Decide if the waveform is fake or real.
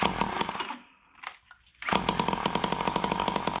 real